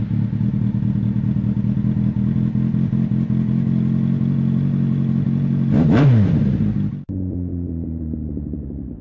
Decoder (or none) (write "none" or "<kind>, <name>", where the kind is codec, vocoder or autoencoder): none